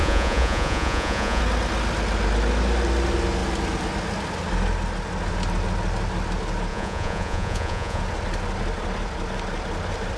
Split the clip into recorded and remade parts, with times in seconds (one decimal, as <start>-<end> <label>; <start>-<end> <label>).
0.0-1.4 remade; 1.4-6.7 recorded; 6.7-8.0 remade; 8.0-10.2 recorded